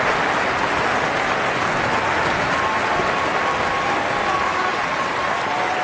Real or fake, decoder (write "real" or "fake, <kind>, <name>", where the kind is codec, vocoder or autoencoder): real